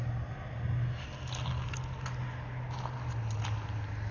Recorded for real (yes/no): yes